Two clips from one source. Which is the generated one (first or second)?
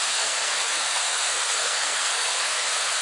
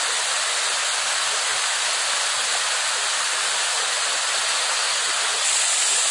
first